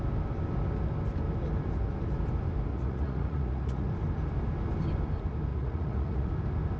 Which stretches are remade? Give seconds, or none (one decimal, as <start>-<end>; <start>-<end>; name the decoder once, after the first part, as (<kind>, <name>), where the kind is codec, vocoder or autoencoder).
2.7-3.9 (vocoder, Vocos); 5.5-6.3